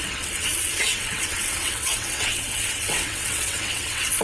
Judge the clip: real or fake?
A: fake